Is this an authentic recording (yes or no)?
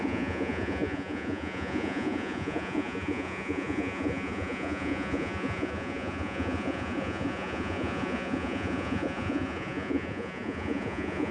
no